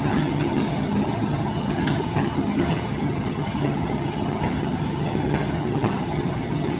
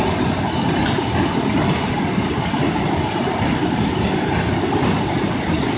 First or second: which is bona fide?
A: second